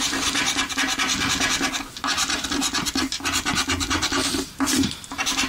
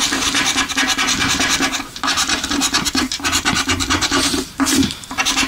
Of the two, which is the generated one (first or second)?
second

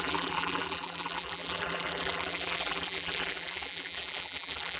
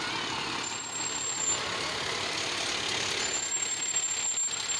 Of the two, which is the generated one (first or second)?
first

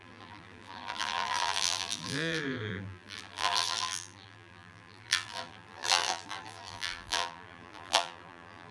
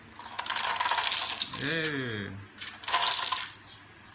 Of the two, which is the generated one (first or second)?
first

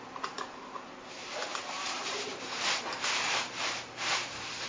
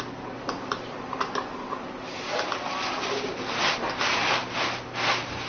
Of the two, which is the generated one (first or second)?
first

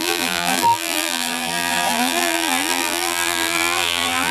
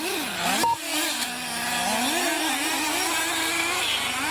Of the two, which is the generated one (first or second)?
first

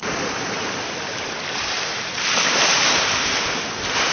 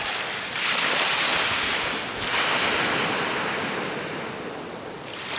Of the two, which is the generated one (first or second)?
first